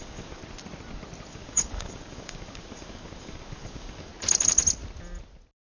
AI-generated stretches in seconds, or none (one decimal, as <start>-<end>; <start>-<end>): 0.0-0.4; 1.3-4.1